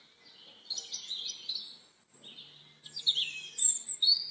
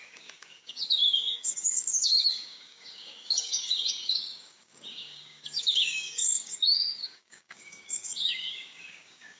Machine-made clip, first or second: second